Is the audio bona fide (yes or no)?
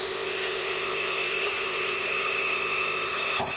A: no